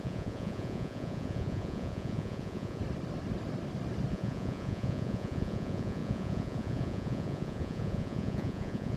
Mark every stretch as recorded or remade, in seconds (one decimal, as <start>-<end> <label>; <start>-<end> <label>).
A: 0.0-2.8 remade; 2.8-4.1 recorded; 4.1-9.0 remade